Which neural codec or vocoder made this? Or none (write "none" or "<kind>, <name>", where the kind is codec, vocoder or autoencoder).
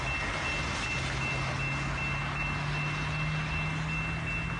none